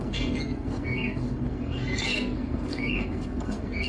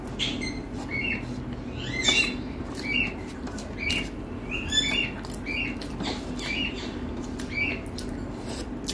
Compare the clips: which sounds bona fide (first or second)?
second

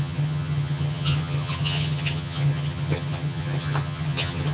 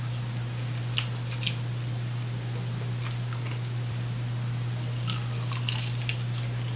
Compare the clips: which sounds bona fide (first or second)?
second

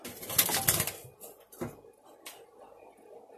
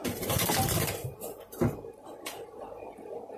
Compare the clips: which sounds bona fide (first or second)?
first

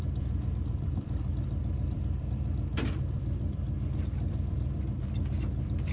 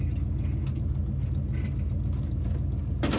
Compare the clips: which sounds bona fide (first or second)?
second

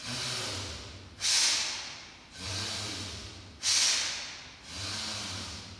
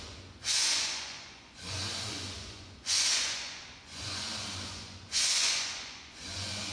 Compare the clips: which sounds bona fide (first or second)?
first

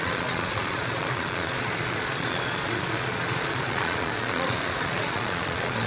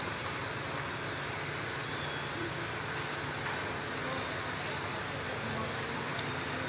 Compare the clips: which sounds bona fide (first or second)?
second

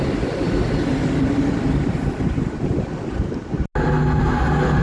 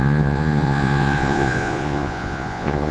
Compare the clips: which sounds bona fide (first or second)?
first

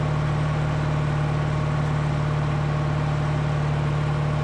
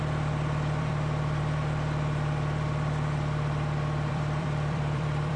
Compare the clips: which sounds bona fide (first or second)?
first